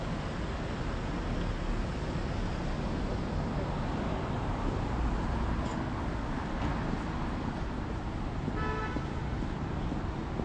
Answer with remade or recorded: recorded